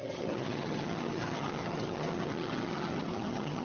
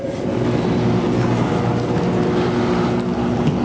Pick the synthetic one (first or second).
first